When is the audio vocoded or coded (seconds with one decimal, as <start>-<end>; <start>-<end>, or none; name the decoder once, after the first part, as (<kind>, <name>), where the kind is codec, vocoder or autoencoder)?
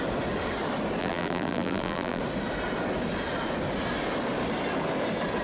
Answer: 1.0-2.2 (vocoder, BigVGAN v2)